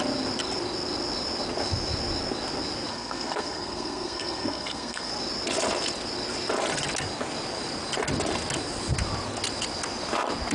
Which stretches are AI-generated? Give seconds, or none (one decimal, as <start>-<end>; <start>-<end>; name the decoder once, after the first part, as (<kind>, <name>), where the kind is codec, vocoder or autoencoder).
2.9-5.1 (codec, SNAC)